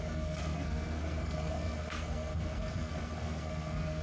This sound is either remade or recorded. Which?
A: remade